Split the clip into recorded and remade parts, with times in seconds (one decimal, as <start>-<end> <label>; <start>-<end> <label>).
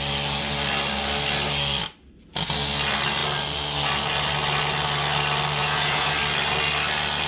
0.0-5.6 recorded; 5.6-6.1 remade; 6.1-7.3 recorded